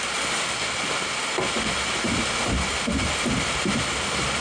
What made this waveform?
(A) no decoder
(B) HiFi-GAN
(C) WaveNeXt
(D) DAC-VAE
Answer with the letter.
A